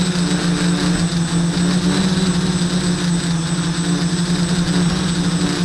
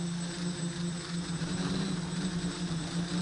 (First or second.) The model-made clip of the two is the second